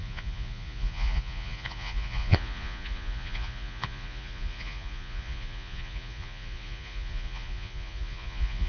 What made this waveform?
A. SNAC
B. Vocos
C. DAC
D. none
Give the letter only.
B